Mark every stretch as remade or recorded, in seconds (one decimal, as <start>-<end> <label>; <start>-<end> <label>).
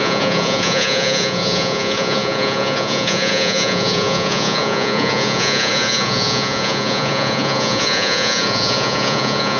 0.0-9.6 remade